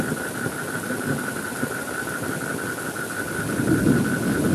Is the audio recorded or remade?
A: recorded